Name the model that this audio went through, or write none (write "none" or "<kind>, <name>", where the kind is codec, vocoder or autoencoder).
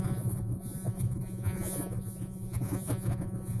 vocoder, Vocos